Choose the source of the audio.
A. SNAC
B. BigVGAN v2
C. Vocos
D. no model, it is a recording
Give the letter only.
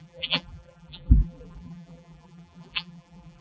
B